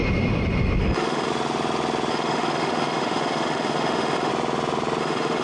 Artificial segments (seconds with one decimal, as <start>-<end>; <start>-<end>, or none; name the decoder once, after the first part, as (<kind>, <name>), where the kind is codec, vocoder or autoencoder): 0.8-1.3 (autoencoder, DAC-VAE); 2.1-4.3; 5.0-5.4